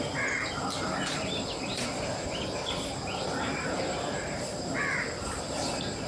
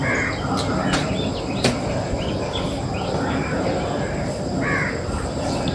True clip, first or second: second